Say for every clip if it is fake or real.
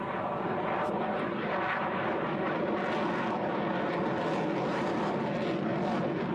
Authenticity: real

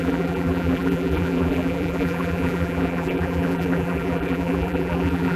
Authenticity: fake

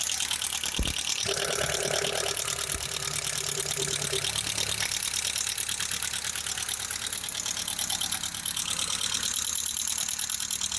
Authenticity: real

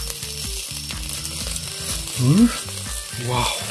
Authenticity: real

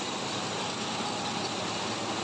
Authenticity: real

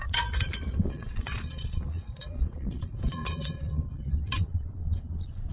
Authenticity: fake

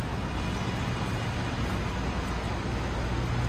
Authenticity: real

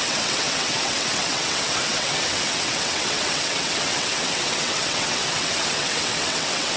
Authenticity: fake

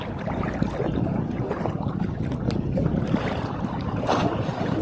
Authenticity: real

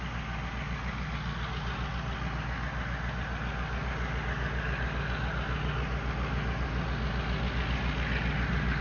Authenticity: real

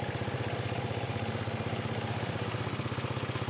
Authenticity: real